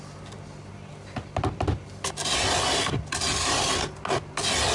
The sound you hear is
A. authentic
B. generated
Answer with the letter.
A